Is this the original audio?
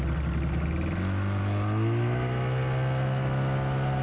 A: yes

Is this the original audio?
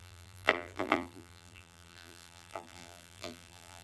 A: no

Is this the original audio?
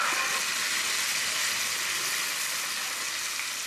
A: yes